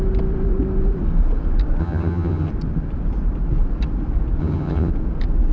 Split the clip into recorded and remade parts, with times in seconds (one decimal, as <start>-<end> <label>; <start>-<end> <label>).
0.0-1.8 recorded; 1.8-2.5 remade; 2.5-4.4 recorded; 4.4-4.9 remade; 4.9-5.5 recorded